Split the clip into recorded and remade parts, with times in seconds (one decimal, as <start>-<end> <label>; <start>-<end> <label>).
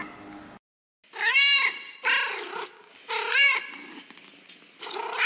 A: 0.0-5.3 recorded